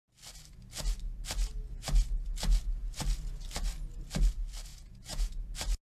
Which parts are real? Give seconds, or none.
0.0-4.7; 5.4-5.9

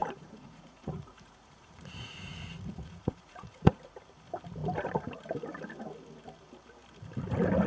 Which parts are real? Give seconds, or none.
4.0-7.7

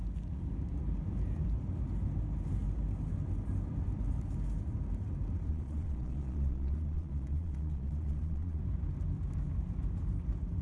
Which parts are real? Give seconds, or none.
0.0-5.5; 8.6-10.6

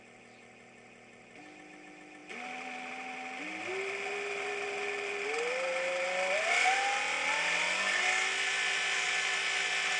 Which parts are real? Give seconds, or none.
0.0-10.0